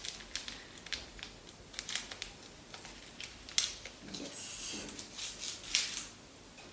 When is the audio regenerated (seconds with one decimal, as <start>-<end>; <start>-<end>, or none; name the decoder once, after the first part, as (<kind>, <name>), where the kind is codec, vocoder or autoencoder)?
none

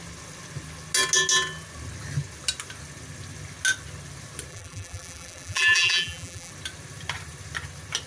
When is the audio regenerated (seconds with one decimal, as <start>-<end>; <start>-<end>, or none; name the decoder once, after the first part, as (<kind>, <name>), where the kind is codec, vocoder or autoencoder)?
4.5-6.5 (vocoder, BigVGAN v2)